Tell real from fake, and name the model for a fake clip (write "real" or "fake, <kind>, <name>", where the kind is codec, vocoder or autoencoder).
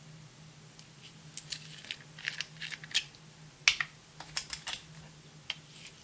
real